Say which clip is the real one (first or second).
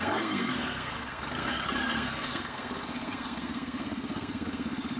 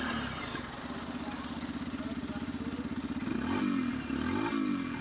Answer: second